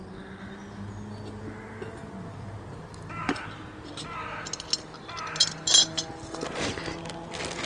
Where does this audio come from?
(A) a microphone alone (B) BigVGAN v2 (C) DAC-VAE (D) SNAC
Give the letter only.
A